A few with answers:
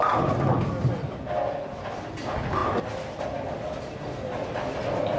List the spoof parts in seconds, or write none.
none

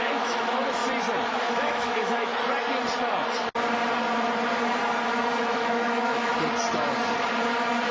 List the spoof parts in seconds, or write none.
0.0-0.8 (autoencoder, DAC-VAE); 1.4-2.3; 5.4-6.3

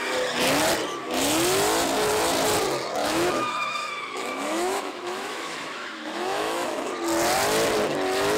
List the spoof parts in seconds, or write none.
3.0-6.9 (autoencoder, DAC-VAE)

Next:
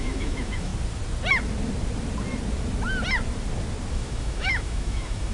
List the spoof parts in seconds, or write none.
0.0-0.7 (autoencoder, DAC-VAE); 3.9-5.3